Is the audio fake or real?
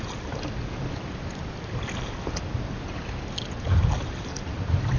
real